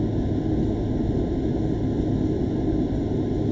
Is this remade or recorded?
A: recorded